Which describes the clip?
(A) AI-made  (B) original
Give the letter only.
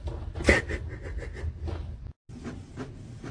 B